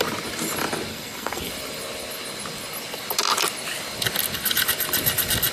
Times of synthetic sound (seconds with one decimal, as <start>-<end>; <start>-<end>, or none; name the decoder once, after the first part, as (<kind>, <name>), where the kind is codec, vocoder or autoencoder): 0.9-1.5 (codec, SNAC)